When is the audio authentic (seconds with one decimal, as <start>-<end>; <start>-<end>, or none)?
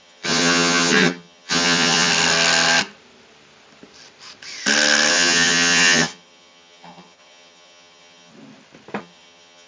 2.1-5.1; 8.3-9.0